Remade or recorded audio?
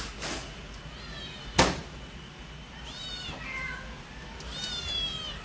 recorded